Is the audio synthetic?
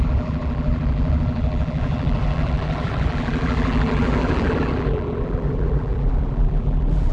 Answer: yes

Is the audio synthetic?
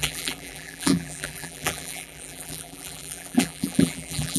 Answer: yes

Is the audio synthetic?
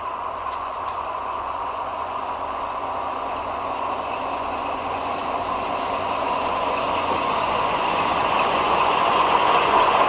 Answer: yes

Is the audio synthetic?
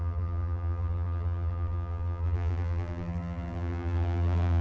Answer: yes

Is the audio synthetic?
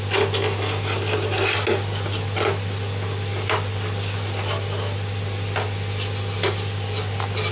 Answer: no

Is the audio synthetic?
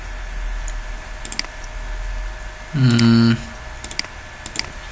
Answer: no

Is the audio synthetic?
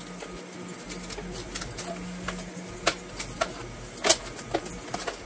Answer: no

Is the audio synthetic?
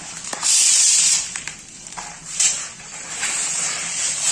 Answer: yes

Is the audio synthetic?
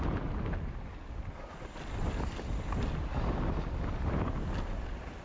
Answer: no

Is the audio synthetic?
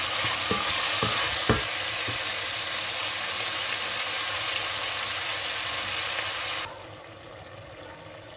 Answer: no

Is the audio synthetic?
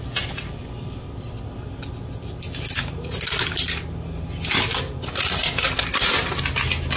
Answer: no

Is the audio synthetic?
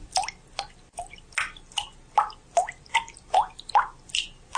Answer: no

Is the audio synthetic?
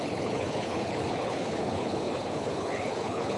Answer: yes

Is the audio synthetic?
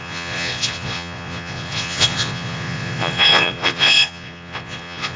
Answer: yes